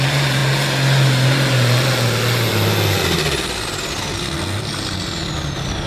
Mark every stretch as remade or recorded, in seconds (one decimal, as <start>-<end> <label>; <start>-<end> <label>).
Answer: 0.0-5.9 recorded